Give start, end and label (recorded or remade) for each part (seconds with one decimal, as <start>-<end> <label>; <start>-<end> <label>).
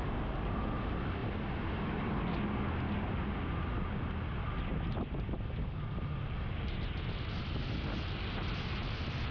0.0-1.2 recorded; 1.2-2.2 remade; 2.2-9.3 recorded